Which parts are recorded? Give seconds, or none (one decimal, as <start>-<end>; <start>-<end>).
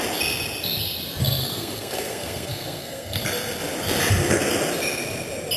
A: 0.0-1.4; 3.2-5.6